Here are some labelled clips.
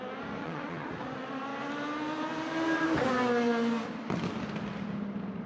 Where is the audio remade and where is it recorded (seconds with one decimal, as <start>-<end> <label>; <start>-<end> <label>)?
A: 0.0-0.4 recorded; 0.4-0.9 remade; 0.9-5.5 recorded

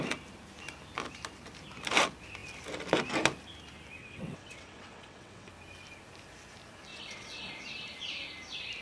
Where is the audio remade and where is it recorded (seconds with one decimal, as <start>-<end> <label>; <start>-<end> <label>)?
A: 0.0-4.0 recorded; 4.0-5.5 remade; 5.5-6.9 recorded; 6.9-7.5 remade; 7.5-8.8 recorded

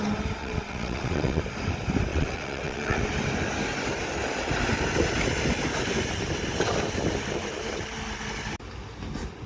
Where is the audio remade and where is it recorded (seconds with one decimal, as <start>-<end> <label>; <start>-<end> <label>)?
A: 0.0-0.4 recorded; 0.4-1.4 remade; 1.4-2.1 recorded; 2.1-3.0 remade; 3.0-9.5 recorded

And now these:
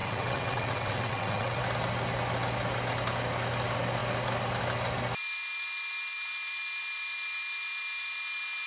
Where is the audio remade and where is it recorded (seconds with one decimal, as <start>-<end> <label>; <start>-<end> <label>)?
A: 0.0-1.6 remade; 1.6-8.7 recorded

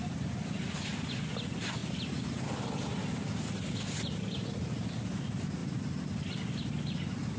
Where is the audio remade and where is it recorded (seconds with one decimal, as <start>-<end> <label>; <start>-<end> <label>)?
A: 0.0-7.4 recorded

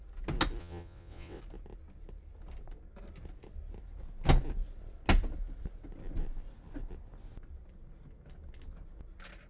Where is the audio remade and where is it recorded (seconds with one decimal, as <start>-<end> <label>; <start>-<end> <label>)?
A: 0.0-0.6 recorded; 0.6-1.4 remade; 1.4-9.5 recorded

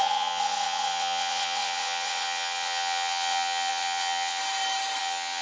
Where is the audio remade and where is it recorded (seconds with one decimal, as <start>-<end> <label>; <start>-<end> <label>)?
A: 0.0-4.4 remade; 4.4-5.0 recorded; 5.0-5.4 remade